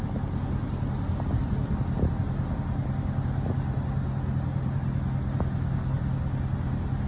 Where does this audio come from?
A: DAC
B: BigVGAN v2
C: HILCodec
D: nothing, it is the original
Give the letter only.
D